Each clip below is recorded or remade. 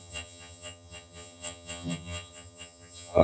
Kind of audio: remade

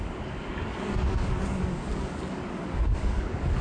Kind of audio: remade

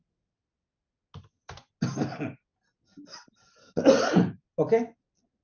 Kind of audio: recorded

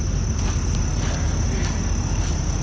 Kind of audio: recorded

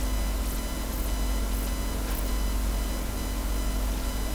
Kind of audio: recorded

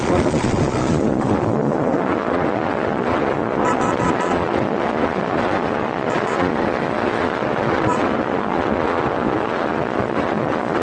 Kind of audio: remade